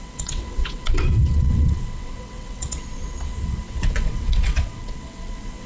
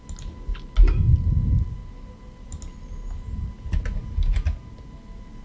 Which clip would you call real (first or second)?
second